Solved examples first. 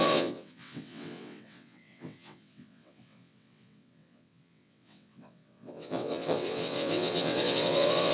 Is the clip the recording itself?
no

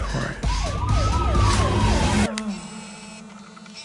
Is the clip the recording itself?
yes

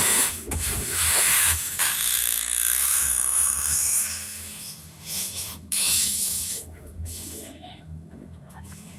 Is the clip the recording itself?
no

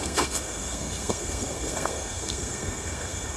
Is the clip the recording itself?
no